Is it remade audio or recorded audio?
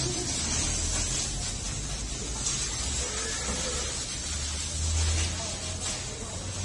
recorded